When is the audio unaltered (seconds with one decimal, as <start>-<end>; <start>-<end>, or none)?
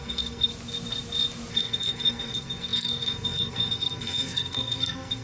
0.5-1.5